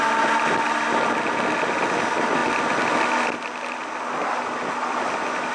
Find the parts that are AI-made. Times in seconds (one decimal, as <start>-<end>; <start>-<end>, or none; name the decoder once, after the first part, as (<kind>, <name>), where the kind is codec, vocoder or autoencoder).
none